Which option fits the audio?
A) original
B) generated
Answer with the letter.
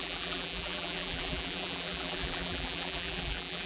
B